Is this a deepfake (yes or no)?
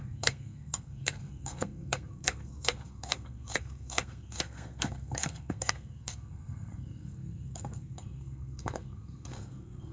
yes